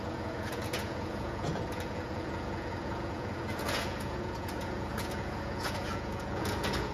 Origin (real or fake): fake